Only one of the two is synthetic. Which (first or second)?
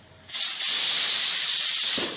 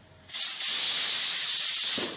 first